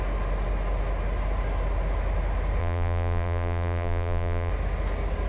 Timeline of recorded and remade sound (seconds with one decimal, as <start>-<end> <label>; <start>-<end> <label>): 0.0-2.6 recorded; 2.6-4.5 remade; 4.5-5.3 recorded